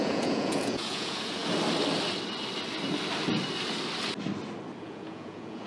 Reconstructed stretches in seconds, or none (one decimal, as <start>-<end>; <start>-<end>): 0.0-1.4; 4.8-5.7